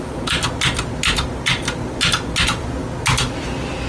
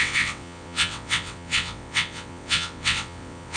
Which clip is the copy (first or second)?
second